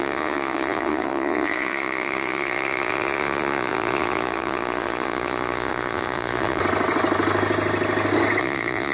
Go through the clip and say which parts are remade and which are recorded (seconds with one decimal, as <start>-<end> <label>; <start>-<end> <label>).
0.0-6.6 remade; 6.6-8.4 recorded; 8.4-8.9 remade